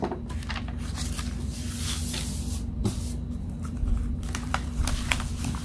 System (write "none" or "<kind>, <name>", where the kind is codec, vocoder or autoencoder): vocoder, BigVGAN v2